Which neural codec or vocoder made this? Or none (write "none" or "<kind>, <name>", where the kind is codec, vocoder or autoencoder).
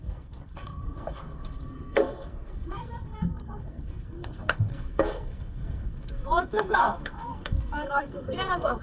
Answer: codec, SNAC